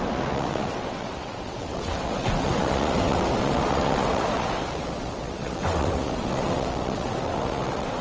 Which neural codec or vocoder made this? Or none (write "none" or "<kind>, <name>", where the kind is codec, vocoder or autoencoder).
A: vocoder, WaveNeXt